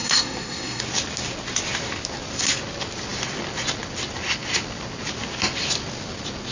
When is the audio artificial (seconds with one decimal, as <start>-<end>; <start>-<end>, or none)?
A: 0.0-0.8